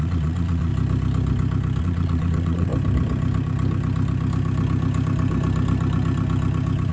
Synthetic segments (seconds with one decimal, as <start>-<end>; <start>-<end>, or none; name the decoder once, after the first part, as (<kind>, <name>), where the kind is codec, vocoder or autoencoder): 0.0-0.7 (vocoder, Vocos); 1.8-2.7